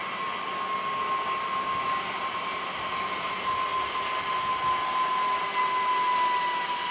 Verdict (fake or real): real